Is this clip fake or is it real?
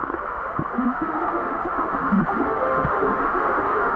fake